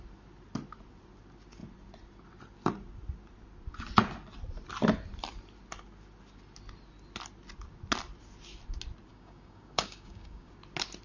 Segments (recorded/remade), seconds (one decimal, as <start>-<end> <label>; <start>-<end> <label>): 0.0-9.1 recorded; 9.1-10.5 remade; 10.5-11.0 recorded